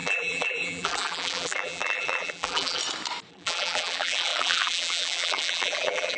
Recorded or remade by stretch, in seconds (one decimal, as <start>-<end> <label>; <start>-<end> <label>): 0.0-2.8 remade; 2.8-3.3 recorded; 3.3-6.2 remade